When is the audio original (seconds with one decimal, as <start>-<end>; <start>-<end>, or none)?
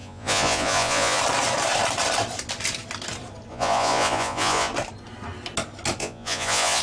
1.2-3.5; 4.7-6.0